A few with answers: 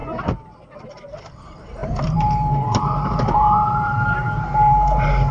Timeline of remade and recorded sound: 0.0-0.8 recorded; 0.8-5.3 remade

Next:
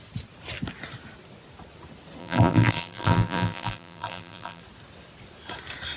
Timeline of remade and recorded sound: 0.0-2.2 recorded; 2.2-4.6 remade; 4.6-6.0 recorded

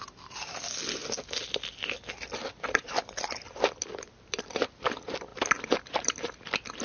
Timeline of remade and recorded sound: 0.0-1.0 remade; 1.0-3.0 recorded; 3.0-6.8 remade